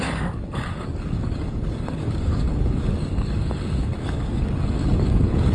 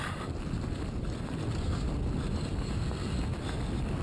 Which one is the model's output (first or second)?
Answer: first